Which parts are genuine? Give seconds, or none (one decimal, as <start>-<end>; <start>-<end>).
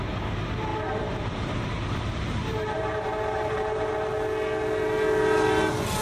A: 0.0-0.7; 3.9-6.0